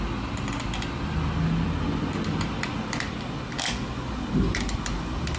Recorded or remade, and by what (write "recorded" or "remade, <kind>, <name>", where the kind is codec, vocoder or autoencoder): recorded